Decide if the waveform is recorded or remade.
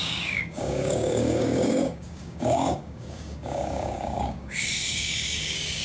remade